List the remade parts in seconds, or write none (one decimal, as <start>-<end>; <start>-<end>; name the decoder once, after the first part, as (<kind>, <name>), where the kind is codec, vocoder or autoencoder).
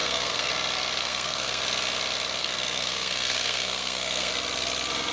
0.0-0.5 (codec, SNAC); 1.0-1.6; 2.4-4.3